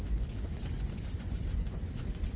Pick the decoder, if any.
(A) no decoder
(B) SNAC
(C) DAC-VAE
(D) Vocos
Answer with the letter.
D